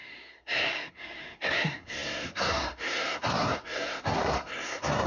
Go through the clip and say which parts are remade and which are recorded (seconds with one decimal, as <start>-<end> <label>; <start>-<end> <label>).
0.0-5.1 remade